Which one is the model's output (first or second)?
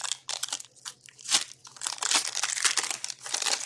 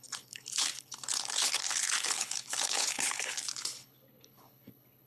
second